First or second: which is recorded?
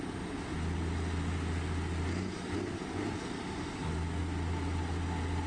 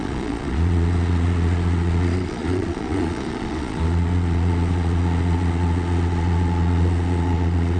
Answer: first